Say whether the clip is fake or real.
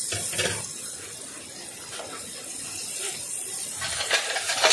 real